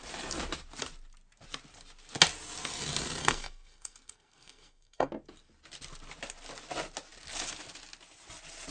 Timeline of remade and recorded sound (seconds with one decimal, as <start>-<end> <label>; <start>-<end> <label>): 0.0-3.2 recorded; 3.2-5.1 remade; 5.1-8.7 recorded